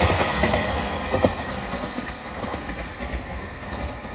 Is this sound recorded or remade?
remade